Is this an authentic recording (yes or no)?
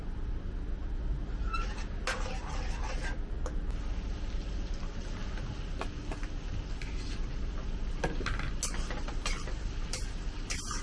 yes